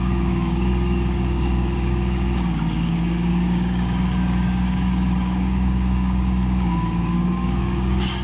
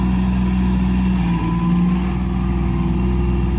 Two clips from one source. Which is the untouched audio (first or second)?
second